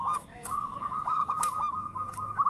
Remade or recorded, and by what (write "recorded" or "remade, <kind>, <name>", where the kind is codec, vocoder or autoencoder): remade, codec, DAC